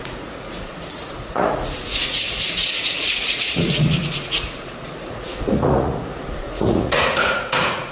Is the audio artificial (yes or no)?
yes